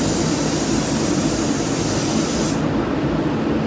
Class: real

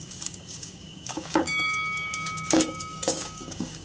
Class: fake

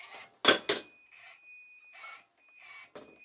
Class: real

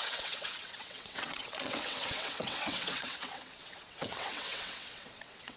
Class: fake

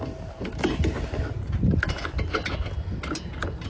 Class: real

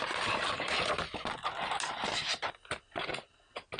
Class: real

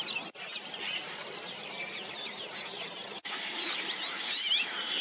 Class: real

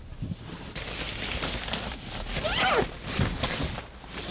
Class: real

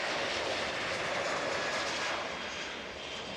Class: real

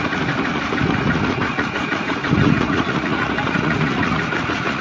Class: fake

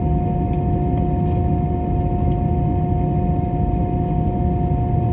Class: real